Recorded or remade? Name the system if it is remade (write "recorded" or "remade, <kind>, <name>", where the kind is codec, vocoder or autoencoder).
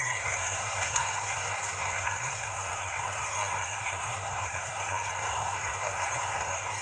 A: remade, codec, SNAC